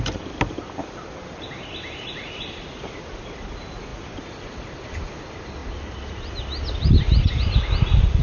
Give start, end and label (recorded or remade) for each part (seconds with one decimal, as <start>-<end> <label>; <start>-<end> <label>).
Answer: 0.0-5.6 remade; 5.6-7.3 recorded; 7.3-8.2 remade

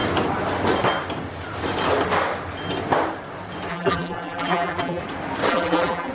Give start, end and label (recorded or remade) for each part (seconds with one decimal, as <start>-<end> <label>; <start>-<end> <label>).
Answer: 0.0-3.7 recorded; 3.7-5.0 remade; 5.0-5.5 recorded; 5.5-6.1 remade